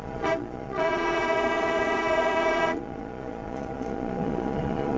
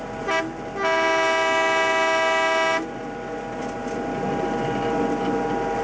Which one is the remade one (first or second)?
first